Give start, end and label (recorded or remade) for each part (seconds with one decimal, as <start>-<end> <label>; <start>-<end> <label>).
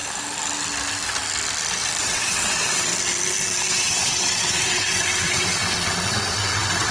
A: 0.0-2.0 recorded; 2.0-2.9 remade; 2.9-3.7 recorded; 3.7-6.9 remade